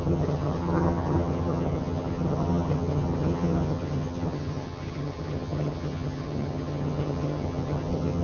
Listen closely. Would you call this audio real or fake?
fake